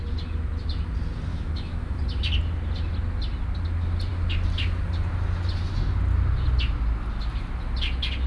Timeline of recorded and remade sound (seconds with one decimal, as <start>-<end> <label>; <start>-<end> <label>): 0.0-1.3 recorded; 1.3-2.0 remade; 2.0-8.3 recorded